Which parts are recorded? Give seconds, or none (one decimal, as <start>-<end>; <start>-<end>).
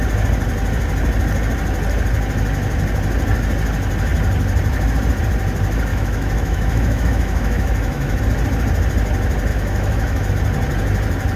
0.0-5.9; 8.2-9.5; 10.3-11.4